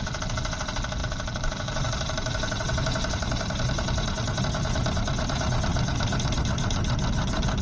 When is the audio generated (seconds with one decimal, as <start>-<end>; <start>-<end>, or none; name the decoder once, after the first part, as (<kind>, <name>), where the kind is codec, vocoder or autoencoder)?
1.0-4.4 (vocoder, BigVGAN v2); 5.7-6.7